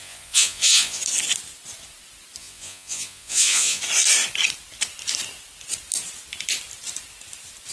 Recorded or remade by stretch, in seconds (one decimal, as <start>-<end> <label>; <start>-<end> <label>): 0.0-1.0 remade; 1.0-2.4 recorded; 2.4-3.8 remade; 3.8-7.7 recorded